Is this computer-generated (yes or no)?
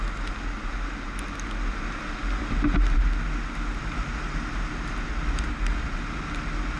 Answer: no